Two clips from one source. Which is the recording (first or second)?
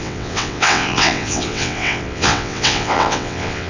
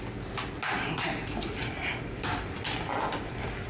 second